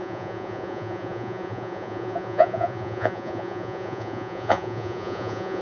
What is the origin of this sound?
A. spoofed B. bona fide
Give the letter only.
A